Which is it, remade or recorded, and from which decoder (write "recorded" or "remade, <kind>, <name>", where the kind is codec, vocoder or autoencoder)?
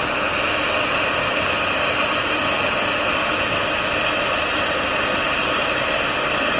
recorded